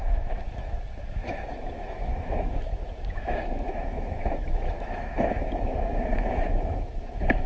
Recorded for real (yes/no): no